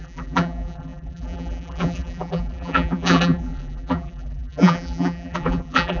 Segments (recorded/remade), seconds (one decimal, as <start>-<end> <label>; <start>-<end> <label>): 0.0-6.0 remade

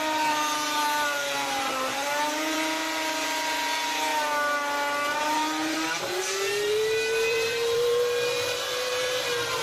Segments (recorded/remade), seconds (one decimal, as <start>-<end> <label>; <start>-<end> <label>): 0.0-4.1 remade; 4.1-5.2 recorded; 5.2-9.6 remade

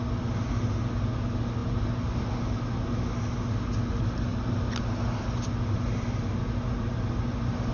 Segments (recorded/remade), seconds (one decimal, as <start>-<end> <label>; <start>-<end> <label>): 0.0-7.7 recorded

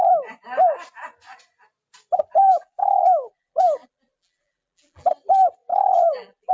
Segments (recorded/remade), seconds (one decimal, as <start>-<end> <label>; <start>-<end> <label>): 0.0-2.4 recorded; 2.4-5.1 remade; 5.1-5.7 recorded; 5.7-6.5 remade

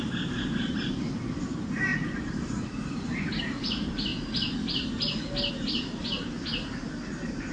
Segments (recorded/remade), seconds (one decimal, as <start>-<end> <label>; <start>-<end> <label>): 0.0-4.1 remade; 4.1-5.5 recorded; 5.5-7.5 remade